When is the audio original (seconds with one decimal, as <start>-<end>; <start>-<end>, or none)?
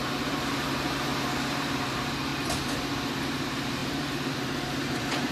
2.3-3.2